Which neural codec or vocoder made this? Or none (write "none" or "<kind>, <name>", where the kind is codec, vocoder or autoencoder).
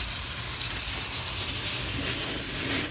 none